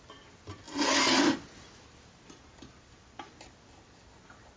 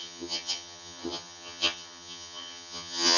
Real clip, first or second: first